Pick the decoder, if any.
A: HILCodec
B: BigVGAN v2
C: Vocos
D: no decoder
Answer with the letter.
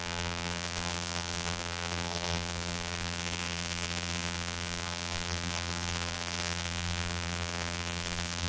B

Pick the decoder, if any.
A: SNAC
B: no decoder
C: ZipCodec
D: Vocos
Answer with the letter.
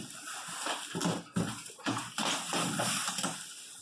B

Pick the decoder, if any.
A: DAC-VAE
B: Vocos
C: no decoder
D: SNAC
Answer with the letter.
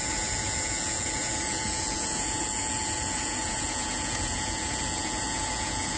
B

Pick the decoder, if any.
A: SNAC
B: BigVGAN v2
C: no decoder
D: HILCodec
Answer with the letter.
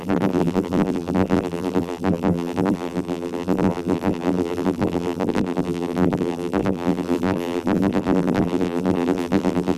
B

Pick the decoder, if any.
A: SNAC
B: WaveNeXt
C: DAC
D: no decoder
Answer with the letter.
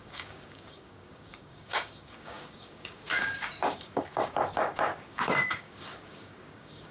C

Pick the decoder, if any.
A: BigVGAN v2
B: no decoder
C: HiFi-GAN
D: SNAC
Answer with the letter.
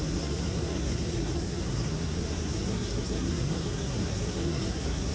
D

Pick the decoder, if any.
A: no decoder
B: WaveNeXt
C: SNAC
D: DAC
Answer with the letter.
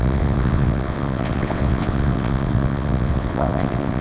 B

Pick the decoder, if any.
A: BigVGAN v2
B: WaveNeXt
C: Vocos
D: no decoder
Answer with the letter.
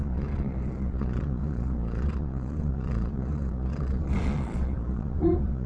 C